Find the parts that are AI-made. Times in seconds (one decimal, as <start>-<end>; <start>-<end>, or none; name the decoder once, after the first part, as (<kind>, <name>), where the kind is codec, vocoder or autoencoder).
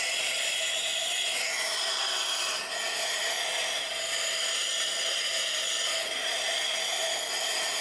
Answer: none